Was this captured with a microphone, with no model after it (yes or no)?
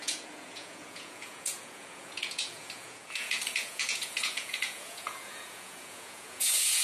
no